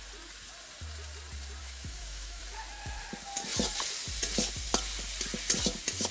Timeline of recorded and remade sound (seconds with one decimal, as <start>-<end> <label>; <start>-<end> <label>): 0.0-1.6 recorded; 1.6-2.4 remade; 2.4-6.1 recorded